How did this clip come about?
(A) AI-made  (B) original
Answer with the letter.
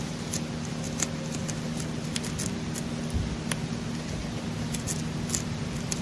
B